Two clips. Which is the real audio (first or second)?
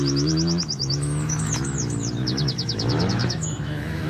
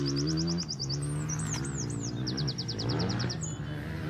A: second